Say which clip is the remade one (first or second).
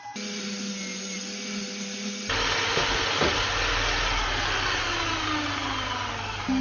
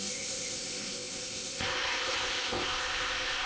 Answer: second